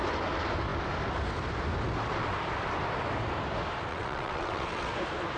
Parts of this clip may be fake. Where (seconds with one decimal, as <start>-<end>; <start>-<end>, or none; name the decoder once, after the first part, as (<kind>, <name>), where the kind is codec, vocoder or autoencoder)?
3.9-4.9 (vocoder, WaveNeXt)